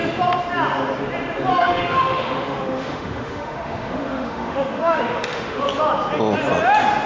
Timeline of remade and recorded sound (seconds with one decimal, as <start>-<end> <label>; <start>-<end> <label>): 0.0-1.5 recorded; 1.5-5.6 remade; 5.6-7.1 recorded